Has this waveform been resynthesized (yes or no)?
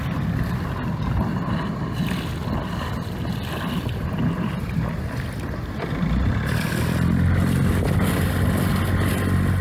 no